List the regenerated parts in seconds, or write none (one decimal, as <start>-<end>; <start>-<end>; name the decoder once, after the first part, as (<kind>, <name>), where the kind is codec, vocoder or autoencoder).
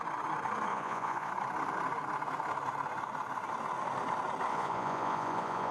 0.7-1.3 (vocoder, Vocos); 4.5-5.7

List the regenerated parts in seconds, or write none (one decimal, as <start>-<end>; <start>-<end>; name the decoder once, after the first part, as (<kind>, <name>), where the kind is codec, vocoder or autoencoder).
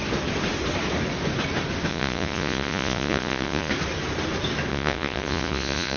1.9-3.7 (vocoder, Vocos); 4.7-6.0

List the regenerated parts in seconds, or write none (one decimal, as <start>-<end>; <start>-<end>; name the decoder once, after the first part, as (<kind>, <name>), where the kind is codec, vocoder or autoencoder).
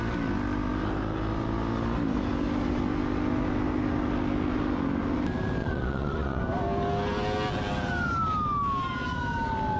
5.6-6.4 (vocoder, Vocos)